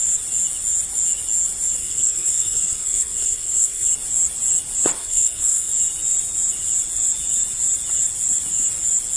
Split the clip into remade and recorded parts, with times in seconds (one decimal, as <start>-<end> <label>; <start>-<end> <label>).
0.0-1.8 recorded; 1.8-3.9 remade; 3.9-5.0 recorded; 5.0-5.7 remade; 5.7-9.2 recorded